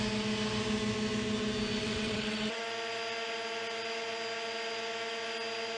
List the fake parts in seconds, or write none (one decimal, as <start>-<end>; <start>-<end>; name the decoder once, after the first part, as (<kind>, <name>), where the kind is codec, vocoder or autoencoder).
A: 1.8-2.6 (vocoder, WaveNeXt)